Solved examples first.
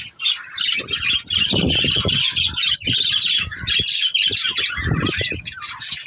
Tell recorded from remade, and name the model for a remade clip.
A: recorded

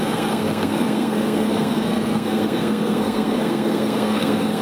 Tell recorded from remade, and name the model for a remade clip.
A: remade, codec, SNAC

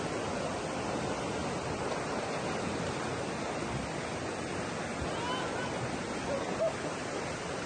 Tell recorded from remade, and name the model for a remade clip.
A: recorded